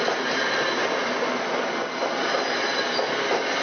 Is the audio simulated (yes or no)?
no